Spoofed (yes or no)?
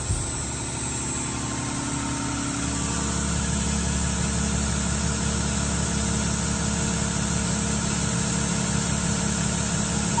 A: no